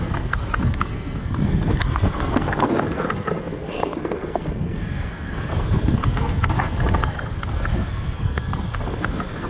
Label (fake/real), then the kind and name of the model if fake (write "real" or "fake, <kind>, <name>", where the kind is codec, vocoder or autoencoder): fake, codec, SNAC